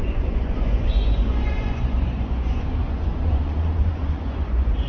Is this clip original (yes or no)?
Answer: no